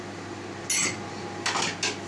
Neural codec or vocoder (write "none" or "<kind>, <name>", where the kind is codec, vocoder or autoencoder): none